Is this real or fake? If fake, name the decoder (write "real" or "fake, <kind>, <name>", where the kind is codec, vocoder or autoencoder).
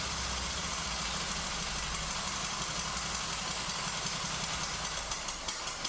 real